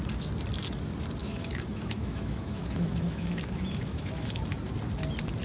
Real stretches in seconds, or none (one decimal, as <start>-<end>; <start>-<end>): 0.0-1.2; 4.4-5.4